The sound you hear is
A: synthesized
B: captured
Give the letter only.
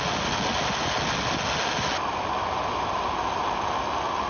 B